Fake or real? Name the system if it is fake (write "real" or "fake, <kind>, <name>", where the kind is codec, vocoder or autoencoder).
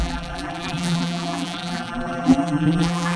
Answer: fake, vocoder, BigVGAN v2